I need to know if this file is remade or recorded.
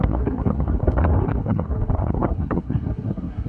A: remade